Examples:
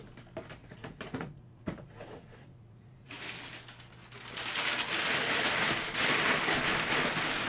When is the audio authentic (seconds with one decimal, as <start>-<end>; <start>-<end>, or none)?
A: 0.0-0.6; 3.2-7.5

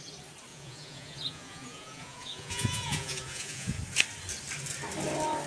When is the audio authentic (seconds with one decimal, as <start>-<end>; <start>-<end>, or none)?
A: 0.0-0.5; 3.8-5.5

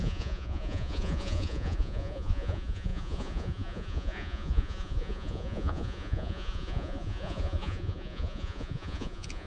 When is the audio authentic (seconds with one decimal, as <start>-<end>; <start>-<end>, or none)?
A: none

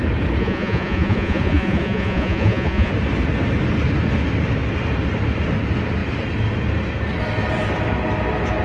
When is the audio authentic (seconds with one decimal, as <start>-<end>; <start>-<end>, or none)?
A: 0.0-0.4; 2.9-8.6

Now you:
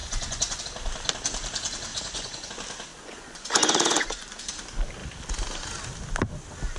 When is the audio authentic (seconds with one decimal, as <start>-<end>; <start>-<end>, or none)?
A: 0.6-1.9; 2.5-2.9; 4.4-6.8